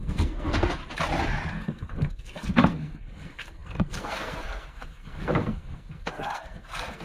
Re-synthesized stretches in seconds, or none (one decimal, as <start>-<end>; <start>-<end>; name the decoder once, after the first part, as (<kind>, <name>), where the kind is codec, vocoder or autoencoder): 0.0-0.8 (codec, SNAC); 1.5-7.0